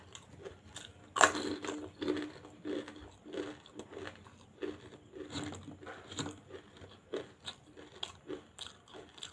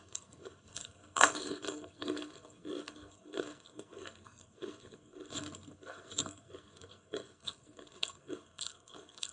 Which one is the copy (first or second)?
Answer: second